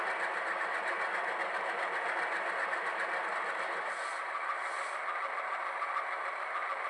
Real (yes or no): yes